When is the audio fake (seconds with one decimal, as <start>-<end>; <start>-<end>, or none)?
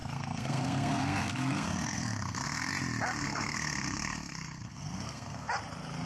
0.0-2.7; 3.2-5.5